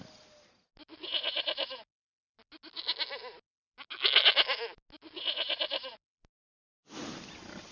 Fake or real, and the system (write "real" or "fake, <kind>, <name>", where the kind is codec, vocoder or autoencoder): real